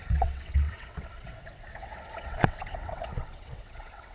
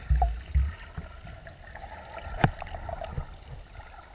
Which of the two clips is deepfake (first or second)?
first